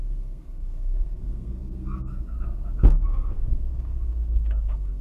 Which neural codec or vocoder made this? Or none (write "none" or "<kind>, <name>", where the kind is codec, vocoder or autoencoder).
codec, SNAC